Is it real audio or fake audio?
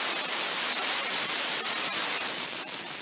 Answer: real